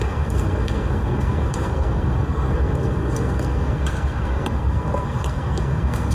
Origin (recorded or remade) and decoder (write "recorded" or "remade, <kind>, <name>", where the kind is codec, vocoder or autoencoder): remade, codec, SNAC